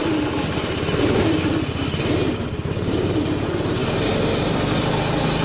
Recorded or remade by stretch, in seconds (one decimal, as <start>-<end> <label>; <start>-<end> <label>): 0.0-3.2 remade; 3.2-5.4 recorded